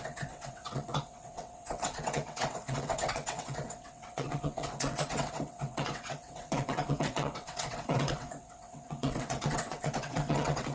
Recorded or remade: remade